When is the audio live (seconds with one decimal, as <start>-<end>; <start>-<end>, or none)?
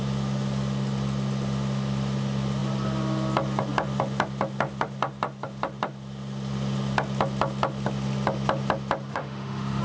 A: 0.0-9.1